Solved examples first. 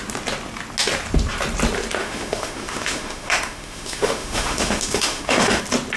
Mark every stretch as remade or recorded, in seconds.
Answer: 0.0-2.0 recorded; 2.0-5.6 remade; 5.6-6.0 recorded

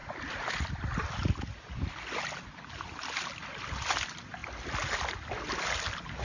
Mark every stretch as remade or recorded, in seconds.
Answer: 0.0-6.2 recorded

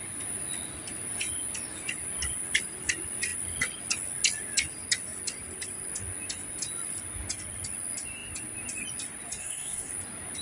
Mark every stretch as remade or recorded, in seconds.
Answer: 0.0-9.4 recorded; 9.4-9.9 remade; 9.9-10.4 recorded

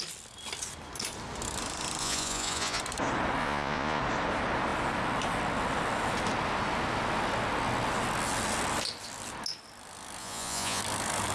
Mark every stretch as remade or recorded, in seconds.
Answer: 0.0-2.0 recorded; 2.0-2.8 remade; 2.8-3.4 recorded; 3.4-4.0 remade; 4.0-10.2 recorded; 10.2-10.8 remade; 10.8-11.3 recorded

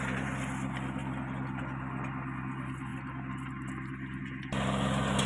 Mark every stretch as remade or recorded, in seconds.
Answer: 0.0-5.3 recorded

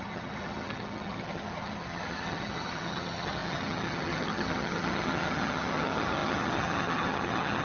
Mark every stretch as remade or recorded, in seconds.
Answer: 0.0-7.6 remade

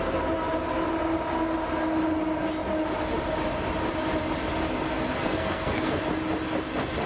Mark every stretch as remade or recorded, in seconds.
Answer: 0.0-5.2 recorded; 5.2-6.0 remade; 6.0-7.1 recorded

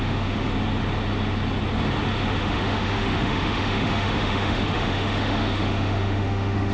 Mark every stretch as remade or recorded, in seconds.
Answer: 0.0-0.5 remade; 0.5-2.4 recorded; 2.4-6.7 remade